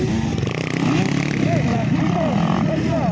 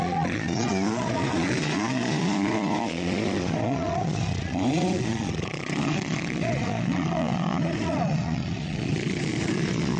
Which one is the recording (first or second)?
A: first